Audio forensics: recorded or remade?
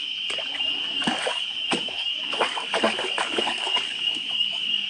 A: remade